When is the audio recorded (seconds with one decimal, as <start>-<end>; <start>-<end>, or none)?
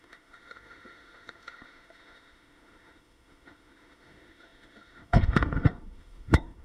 none